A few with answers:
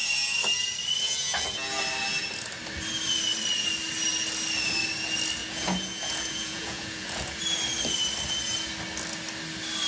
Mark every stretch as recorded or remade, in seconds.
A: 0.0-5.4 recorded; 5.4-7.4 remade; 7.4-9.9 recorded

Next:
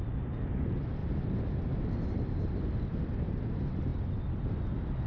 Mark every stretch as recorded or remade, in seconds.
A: 0.0-5.1 recorded